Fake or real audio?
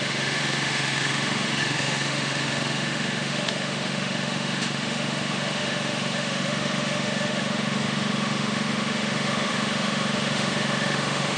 fake